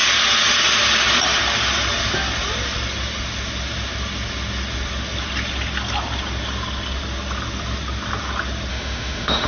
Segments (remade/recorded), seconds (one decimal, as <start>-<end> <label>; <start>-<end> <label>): 0.0-8.7 recorded; 8.7-9.5 remade